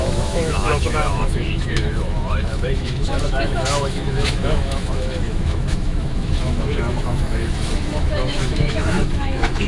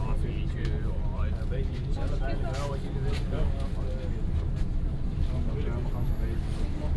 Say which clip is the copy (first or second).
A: first